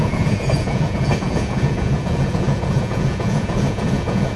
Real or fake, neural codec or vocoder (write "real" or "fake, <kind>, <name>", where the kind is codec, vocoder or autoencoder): fake, vocoder, Vocos